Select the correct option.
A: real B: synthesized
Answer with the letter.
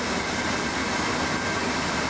A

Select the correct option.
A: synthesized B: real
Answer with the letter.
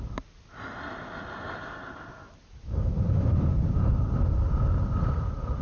B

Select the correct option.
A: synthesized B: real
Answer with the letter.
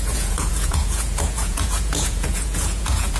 A